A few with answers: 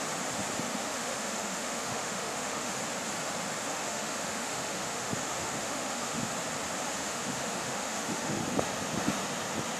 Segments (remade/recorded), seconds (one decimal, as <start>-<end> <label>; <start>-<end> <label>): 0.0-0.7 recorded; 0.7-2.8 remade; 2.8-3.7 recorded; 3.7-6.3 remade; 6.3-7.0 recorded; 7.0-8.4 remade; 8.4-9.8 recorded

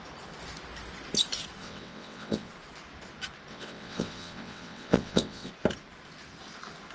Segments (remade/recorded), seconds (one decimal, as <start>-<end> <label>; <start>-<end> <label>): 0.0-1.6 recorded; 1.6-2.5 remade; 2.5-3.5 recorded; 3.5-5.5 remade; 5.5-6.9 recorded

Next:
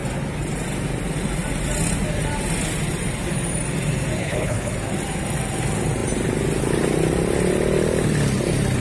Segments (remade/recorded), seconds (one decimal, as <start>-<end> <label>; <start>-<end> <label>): 0.0-4.2 recorded; 4.2-4.7 remade; 4.7-8.8 recorded

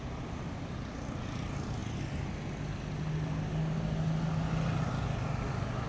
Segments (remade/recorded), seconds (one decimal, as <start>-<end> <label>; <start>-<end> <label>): 0.0-5.9 recorded